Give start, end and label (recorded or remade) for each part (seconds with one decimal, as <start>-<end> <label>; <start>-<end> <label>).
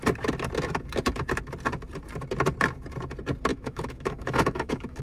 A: 0.0-3.5 recorded; 3.5-5.0 remade